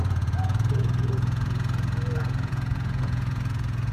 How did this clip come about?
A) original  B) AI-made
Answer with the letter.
B